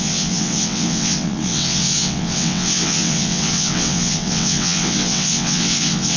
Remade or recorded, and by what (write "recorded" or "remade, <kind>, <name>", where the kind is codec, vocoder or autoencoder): remade, vocoder, WaveNeXt